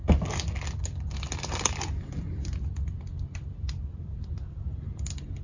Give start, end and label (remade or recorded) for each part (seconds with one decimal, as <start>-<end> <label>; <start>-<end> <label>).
0.0-5.4 recorded